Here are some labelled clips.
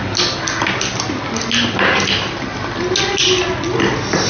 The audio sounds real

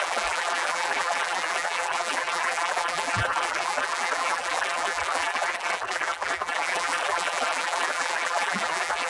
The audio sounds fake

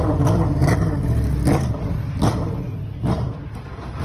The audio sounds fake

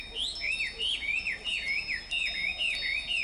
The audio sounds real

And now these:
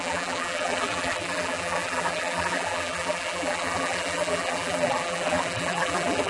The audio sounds fake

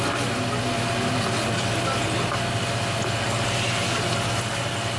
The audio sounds real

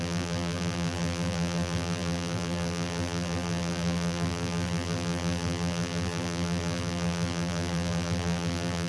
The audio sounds fake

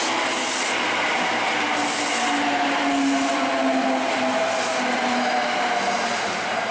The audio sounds real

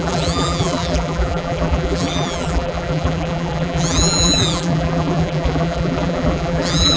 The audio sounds fake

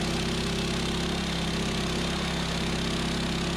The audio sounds real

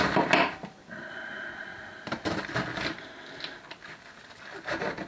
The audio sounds real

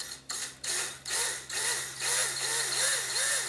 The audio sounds real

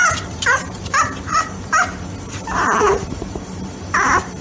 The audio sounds fake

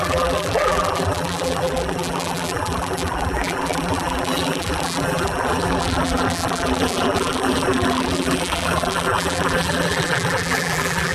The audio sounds fake